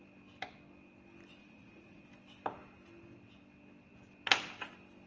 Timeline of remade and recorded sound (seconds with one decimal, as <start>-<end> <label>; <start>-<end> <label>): 0.0-1.4 recorded; 1.4-2.0 remade; 2.0-5.1 recorded